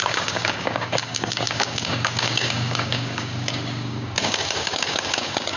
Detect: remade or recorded remade